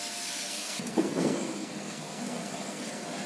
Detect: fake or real fake